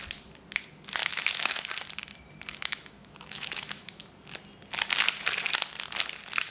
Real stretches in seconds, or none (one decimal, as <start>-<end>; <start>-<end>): 0.0-1.0; 1.7-2.5; 4.0-6.5